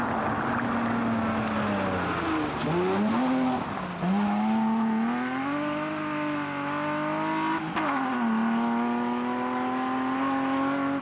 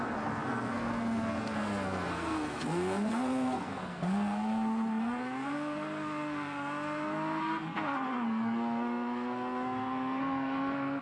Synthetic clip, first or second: second